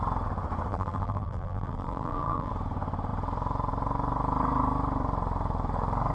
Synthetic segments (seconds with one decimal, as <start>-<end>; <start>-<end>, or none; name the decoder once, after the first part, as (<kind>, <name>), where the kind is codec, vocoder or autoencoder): 0.7-2.5 (vocoder, BigVGAN v2)